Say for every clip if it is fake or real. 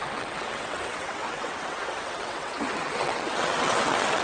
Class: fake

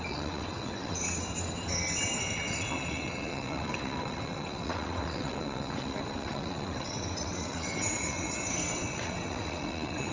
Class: fake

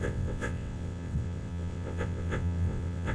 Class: fake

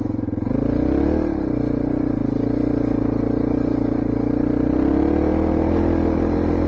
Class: real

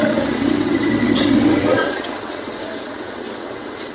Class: fake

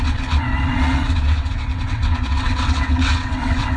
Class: fake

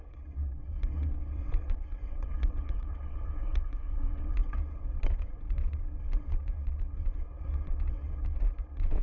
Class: fake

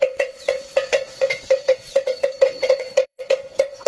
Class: fake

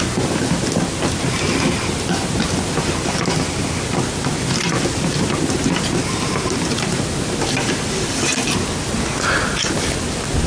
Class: real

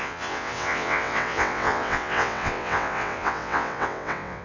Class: fake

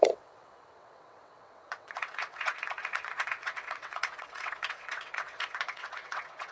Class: fake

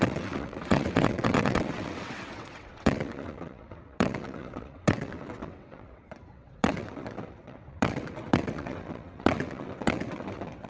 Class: fake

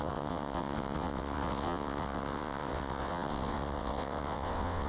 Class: fake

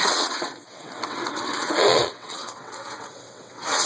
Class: fake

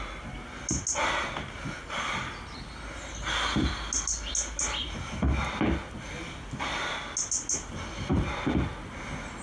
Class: real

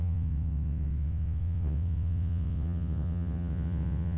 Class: fake